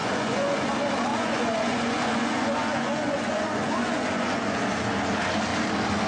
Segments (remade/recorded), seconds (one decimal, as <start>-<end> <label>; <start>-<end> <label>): 0.0-0.7 remade; 0.7-1.1 recorded; 1.1-4.6 remade; 4.6-6.1 recorded